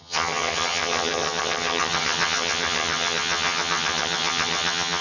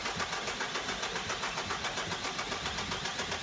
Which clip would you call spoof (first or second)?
first